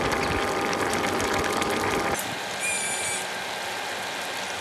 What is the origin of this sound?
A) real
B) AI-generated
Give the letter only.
A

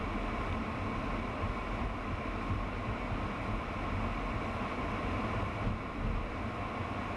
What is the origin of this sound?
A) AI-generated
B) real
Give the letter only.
B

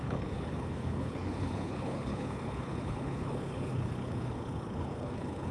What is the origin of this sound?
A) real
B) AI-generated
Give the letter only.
B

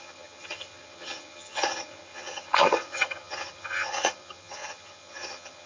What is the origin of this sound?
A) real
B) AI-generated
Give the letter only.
B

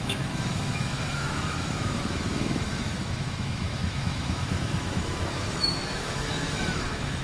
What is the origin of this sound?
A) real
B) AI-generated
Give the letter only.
B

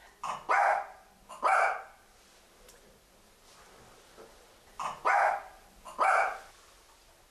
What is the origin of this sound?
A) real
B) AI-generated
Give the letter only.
A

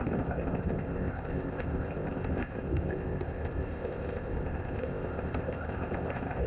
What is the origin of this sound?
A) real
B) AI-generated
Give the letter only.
B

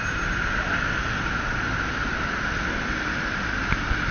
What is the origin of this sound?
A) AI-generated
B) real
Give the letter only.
A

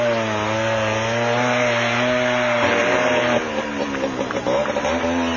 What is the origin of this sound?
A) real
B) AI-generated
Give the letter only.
A